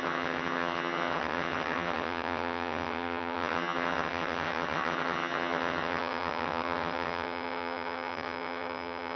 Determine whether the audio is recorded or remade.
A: remade